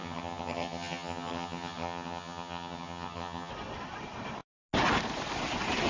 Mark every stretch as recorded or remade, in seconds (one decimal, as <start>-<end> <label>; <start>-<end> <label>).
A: 0.0-3.5 remade; 3.5-5.9 recorded